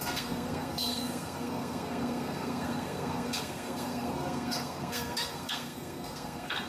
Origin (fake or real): fake